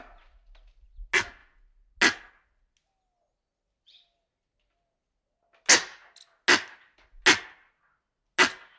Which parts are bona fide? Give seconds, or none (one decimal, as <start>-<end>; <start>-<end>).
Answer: 0.0-8.8